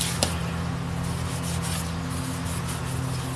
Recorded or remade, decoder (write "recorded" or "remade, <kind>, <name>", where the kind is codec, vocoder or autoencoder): recorded